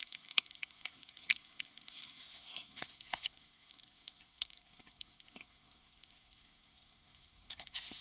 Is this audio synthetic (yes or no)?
yes